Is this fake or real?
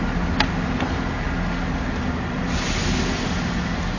real